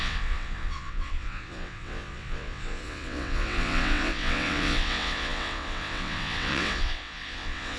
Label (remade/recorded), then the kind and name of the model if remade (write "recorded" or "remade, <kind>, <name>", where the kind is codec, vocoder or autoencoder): remade, vocoder, WaveNeXt